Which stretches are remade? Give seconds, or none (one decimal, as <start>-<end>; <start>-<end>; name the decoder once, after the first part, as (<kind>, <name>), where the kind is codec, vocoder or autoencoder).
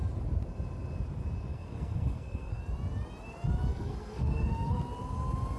1.5-2.6 (codec, SNAC); 3.7-4.8